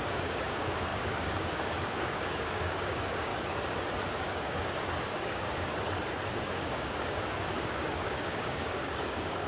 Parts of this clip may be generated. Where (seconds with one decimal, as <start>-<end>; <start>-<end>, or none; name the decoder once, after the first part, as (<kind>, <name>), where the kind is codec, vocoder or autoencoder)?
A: 0.0-3.3 (codec, DAC); 4.1-5.7; 6.3-9.5

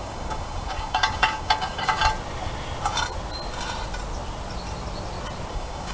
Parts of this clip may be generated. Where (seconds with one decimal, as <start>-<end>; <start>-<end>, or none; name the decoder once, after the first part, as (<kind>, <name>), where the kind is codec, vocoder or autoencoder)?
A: 0.0-2.0 (codec, DAC); 5.5-5.9

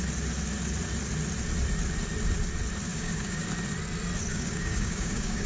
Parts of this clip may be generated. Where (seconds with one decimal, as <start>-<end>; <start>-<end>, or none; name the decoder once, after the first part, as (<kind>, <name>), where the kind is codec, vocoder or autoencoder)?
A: 2.9-3.5 (codec, DAC); 4.3-5.5

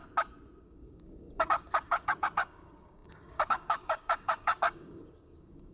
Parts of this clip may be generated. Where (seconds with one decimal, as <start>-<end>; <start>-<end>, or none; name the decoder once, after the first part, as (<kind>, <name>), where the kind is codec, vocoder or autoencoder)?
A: 0.6-5.7 (codec, DAC)